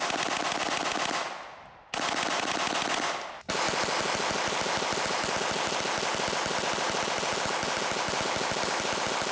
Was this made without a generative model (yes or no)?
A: yes